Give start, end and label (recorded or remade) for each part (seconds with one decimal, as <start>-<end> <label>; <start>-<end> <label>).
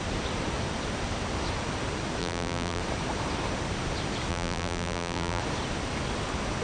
0.0-2.2 recorded; 2.2-2.8 remade; 2.8-4.3 recorded; 4.3-5.4 remade; 5.4-6.6 recorded